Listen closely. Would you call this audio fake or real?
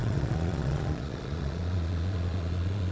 fake